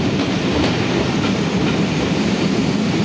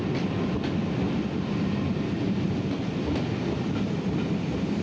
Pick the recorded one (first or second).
first